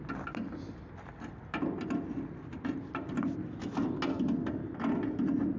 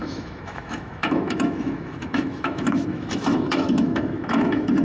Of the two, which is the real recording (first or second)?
first